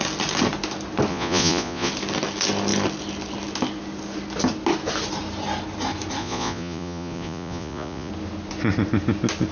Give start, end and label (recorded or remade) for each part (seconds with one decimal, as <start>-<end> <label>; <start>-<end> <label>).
0.0-1.1 recorded; 1.1-1.9 remade; 1.9-6.2 recorded; 6.2-8.1 remade; 8.1-9.5 recorded

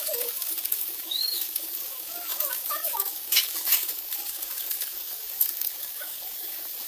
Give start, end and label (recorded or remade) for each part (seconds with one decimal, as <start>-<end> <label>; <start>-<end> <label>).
0.0-6.9 remade

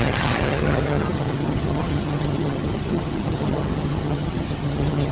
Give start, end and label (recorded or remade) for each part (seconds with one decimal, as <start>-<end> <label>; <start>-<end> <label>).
0.0-5.1 remade

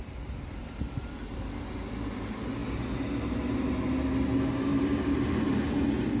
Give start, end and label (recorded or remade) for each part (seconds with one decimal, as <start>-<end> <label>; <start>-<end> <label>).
0.0-4.7 recorded; 4.7-5.4 remade; 5.4-6.2 recorded

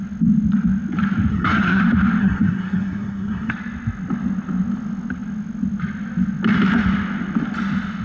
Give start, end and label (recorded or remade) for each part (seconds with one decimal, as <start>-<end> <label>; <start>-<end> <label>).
0.0-1.3 recorded; 1.3-1.8 remade; 1.8-2.2 recorded; 2.2-3.5 remade; 3.5-8.0 recorded

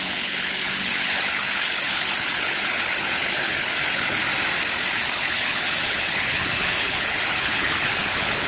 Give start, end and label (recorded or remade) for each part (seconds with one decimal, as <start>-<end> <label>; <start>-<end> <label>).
0.0-4.2 remade; 4.2-4.9 recorded; 4.9-8.5 remade

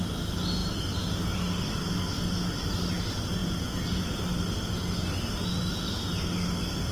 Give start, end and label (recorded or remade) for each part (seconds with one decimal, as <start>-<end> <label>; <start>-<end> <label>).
0.0-3.4 recorded; 3.4-4.2 remade; 4.2-6.9 recorded

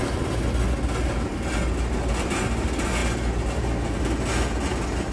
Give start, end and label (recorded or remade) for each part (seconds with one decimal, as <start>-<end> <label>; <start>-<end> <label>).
0.0-5.1 recorded